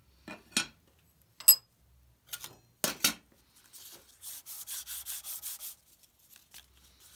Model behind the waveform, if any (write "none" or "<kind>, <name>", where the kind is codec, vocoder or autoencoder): none